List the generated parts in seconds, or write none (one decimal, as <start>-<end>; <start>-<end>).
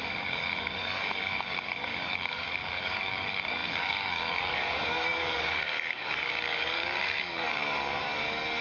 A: 0.0-8.6